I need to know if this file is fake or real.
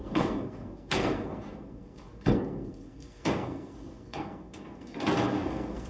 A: fake